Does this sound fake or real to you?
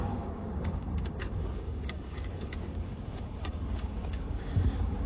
fake